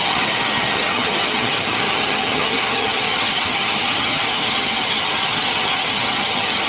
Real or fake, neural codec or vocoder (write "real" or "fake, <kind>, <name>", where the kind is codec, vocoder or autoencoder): fake, vocoder, HiFi-GAN